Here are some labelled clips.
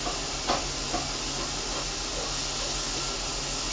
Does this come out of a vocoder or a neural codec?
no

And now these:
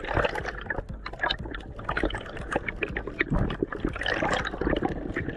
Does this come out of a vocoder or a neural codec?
no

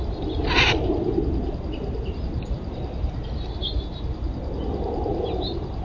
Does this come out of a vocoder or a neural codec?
no